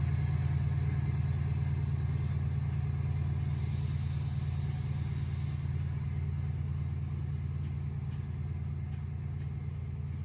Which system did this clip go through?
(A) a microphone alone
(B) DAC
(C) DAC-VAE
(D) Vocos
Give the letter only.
A